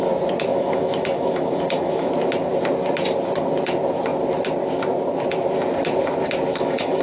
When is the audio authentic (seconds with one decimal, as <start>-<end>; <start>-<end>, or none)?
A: 0.0-0.5; 2.1-6.5